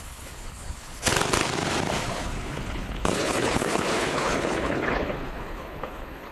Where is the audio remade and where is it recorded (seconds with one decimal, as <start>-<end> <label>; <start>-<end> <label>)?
0.0-1.1 remade; 1.1-2.0 recorded; 2.0-6.3 remade

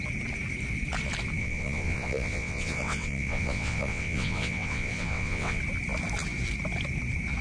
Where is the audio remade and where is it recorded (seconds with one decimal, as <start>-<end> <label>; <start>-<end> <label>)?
0.0-1.4 recorded; 1.4-5.6 remade; 5.6-7.4 recorded

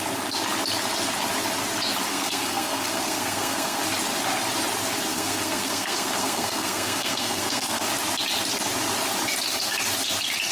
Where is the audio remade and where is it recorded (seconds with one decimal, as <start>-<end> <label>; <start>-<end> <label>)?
0.0-2.1 recorded; 2.1-3.8 remade; 3.8-5.1 recorded; 5.1-7.9 remade; 7.9-10.5 recorded

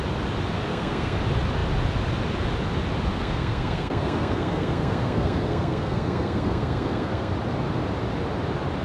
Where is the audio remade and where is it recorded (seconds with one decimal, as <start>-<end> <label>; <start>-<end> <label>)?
0.0-0.7 recorded; 0.7-1.2 remade; 1.2-3.1 recorded; 3.1-7.3 remade; 7.3-8.8 recorded

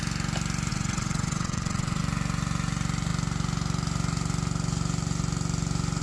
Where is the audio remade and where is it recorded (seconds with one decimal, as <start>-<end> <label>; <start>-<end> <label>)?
0.0-0.7 recorded; 0.7-2.0 remade; 2.0-6.0 recorded

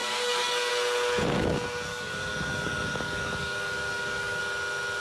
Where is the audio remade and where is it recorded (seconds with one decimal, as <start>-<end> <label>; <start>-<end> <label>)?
0.0-0.7 remade; 0.7-1.9 recorded; 1.9-4.4 remade; 4.4-5.0 recorded

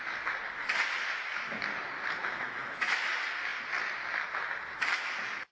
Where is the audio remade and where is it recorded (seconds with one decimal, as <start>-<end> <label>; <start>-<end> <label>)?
0.0-2.2 recorded; 2.2-3.1 remade; 3.1-5.5 recorded

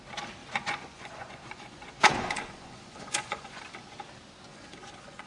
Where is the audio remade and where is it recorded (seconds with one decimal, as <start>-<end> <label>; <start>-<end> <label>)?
0.0-0.4 recorded; 0.4-3.6 remade; 3.6-4.5 recorded; 4.5-5.3 remade